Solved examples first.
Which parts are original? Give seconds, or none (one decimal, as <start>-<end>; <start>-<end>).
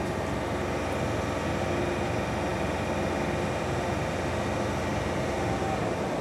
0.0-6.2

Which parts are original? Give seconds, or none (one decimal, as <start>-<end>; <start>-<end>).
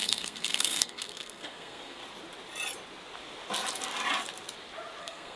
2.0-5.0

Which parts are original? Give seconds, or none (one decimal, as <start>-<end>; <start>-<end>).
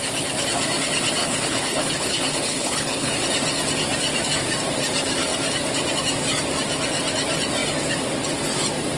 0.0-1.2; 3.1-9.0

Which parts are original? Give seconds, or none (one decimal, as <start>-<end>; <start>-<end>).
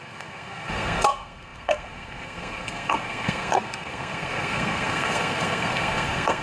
none